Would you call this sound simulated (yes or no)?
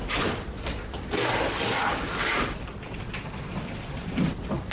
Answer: no